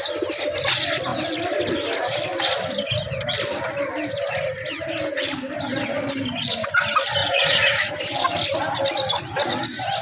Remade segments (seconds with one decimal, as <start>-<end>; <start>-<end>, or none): 7.2-7.9